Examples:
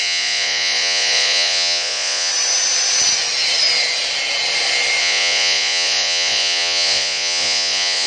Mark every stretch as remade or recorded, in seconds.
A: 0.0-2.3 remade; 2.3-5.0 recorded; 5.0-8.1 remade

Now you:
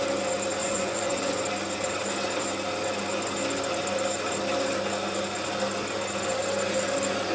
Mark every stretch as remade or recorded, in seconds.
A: 0.0-0.6 recorded; 0.6-1.4 remade; 1.4-7.3 recorded

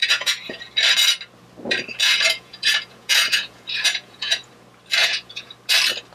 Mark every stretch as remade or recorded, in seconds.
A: 0.0-0.6 remade; 0.6-2.0 recorded; 2.0-4.5 remade; 4.5-5.0 recorded; 5.0-5.5 remade; 5.5-6.1 recorded

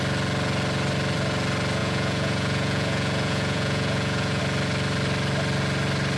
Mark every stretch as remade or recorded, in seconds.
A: 0.0-1.8 recorded; 1.8-4.4 remade; 4.4-6.2 recorded

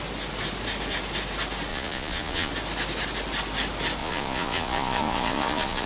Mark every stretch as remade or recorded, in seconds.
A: 0.0-1.7 recorded; 1.7-2.5 remade; 2.5-4.0 recorded; 4.0-5.9 remade

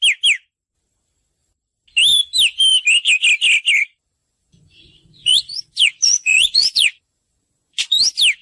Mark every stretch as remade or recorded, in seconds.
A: 0.0-4.2 recorded; 4.2-8.0 remade; 8.0-8.4 recorded

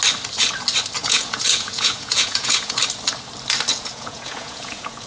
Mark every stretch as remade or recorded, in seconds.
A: 0.0-1.0 recorded; 1.0-2.8 remade; 2.8-3.7 recorded; 3.7-5.1 remade